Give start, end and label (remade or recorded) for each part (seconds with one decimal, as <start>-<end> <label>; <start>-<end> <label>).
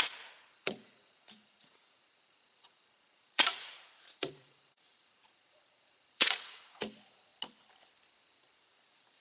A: 0.0-7.3 remade; 7.3-8.2 recorded; 8.2-9.2 remade